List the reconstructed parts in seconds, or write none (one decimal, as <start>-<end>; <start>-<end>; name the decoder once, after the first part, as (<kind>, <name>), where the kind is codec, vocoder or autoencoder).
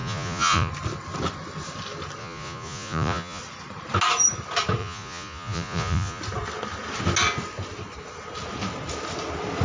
0.0-0.7 (vocoder, Vocos); 2.2-3.4; 4.8-6.2